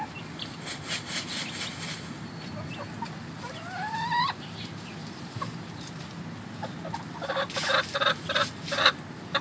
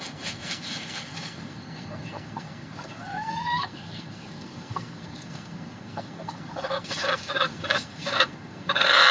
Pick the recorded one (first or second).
first